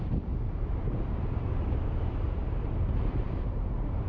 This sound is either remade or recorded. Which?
remade